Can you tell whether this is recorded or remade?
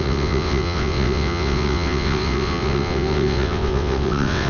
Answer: remade